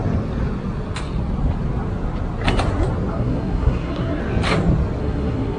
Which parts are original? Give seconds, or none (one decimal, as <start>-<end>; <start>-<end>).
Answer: 0.0-3.1; 4.2-5.0